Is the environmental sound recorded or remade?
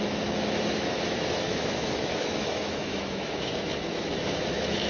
remade